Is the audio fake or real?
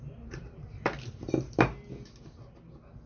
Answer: real